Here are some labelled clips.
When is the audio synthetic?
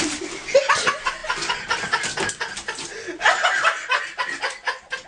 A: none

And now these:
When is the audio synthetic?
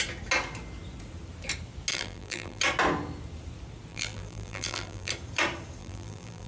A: 1.9-2.6; 3.9-5.1; 5.8-6.5